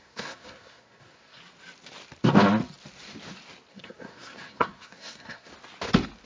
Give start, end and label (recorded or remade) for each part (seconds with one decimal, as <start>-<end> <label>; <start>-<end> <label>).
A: 0.0-1.4 remade; 1.4-3.7 recorded; 3.7-5.5 remade; 5.5-6.3 recorded